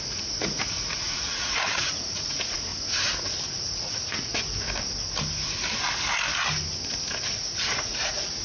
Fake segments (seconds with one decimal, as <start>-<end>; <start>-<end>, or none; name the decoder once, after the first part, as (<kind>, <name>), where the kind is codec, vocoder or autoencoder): 0.0-2.7 (vocoder, Vocos); 3.6-4.3; 7.5-8.4